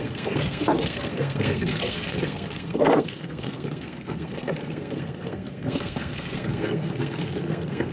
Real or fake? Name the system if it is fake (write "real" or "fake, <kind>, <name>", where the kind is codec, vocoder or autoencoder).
fake, codec, SNAC